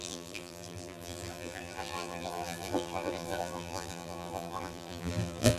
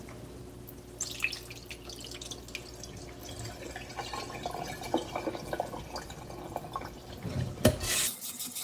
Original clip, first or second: second